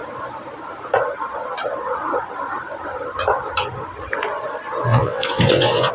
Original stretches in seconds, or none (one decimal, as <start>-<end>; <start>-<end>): 0.0-4.9